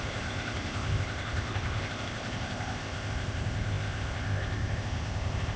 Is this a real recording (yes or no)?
no